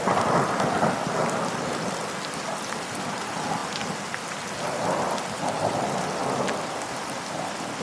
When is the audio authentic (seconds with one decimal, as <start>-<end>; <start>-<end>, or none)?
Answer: 0.0-7.8